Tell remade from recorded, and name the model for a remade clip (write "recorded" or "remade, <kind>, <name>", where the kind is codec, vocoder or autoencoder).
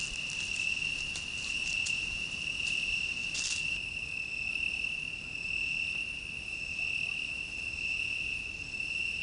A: recorded